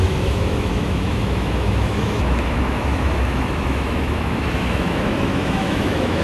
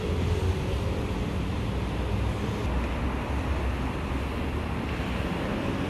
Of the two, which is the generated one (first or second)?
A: first